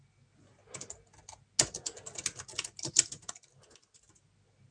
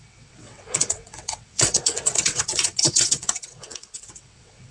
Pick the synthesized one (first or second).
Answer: second